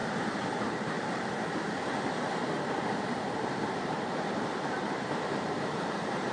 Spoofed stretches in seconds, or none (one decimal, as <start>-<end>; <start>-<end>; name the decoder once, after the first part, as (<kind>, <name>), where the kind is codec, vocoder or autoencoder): 0.0-2.0 (vocoder, BigVGAN v2); 2.4-6.3